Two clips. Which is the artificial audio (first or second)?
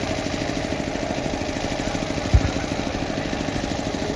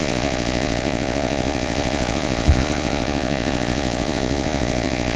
second